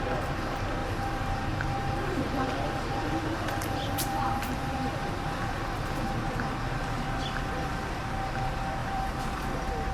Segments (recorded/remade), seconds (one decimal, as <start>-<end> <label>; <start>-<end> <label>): 0.0-0.8 recorded; 0.8-5.1 remade; 5.1-8.8 recorded; 8.8-9.5 remade; 9.5-9.9 recorded